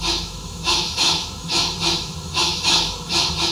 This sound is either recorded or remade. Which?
remade